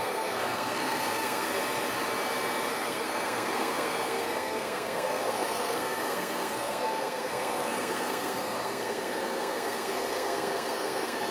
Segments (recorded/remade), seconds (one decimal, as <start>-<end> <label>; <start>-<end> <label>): 0.0-1.5 remade; 1.5-2.7 recorded; 2.7-11.3 remade